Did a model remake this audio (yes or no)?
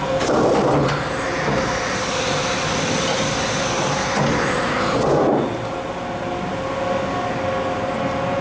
no